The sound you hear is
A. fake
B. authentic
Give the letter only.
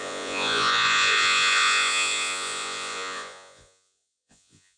A